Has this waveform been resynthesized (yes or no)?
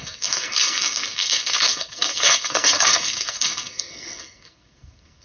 yes